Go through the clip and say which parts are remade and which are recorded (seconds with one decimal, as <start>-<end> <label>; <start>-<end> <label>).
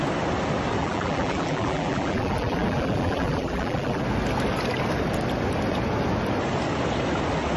0.0-0.8 recorded; 0.8-4.0 remade; 4.0-7.6 recorded